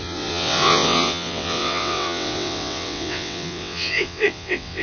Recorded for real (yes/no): no